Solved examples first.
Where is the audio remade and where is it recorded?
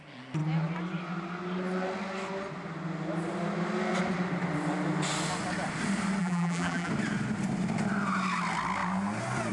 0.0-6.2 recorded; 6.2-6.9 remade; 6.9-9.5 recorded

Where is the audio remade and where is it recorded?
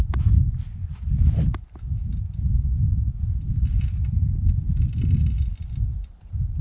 0.0-6.6 recorded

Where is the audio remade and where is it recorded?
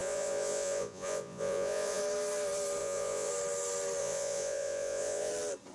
0.0-2.0 remade; 2.0-2.8 recorded; 2.8-3.3 remade; 3.3-4.0 recorded; 4.0-5.3 remade; 5.3-5.7 recorded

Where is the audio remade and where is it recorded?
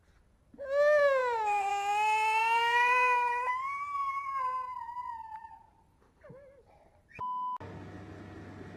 0.0-1.2 recorded; 1.2-1.7 remade; 1.7-2.4 recorded; 2.4-3.5 remade; 3.5-5.2 recorded; 5.2-5.8 remade; 5.8-8.8 recorded